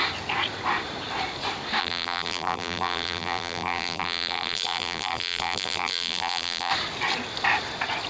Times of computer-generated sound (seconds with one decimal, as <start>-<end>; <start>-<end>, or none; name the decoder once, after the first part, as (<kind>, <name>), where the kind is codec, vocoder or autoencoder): 1.8-6.7 (vocoder, BigVGAN v2)